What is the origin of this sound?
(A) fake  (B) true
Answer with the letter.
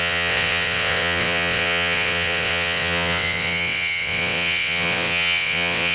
A